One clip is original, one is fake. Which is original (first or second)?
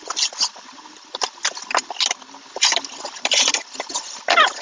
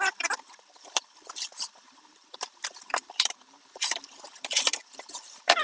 first